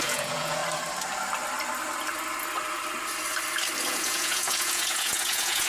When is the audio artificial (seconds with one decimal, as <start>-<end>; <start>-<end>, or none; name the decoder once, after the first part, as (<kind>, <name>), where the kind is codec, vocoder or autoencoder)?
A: 0.0-0.6 (vocoder, Vocos); 3.9-5.7